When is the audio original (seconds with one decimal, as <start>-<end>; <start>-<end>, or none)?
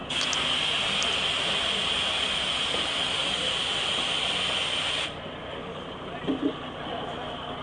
0.0-7.6